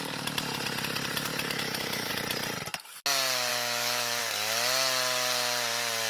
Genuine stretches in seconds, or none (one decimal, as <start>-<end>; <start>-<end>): 0.0-1.3; 2.1-3.5; 4.2-6.1